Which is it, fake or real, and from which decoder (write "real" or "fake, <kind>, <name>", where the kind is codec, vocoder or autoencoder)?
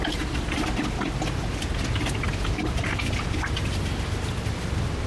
real